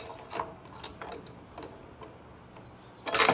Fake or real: real